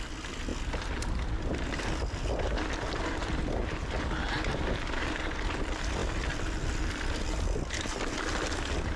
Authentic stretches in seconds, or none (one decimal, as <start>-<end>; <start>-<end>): 0.0-9.0